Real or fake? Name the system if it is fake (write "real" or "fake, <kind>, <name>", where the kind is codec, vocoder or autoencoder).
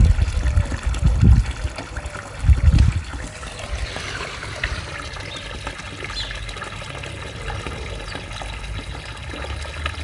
real